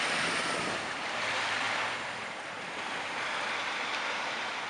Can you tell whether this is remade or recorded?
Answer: remade